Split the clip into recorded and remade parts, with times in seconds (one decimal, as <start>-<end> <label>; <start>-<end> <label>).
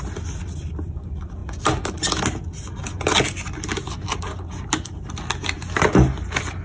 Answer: 0.0-6.6 recorded